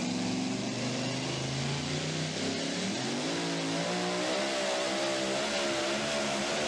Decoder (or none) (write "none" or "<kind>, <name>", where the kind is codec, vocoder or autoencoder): none